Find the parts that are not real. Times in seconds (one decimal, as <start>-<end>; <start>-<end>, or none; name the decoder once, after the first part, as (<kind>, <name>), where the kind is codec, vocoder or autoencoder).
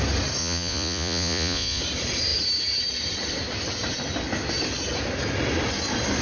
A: 0.4-1.8 (vocoder, Vocos)